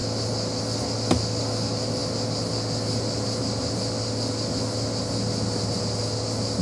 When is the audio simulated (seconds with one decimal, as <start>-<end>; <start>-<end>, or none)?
none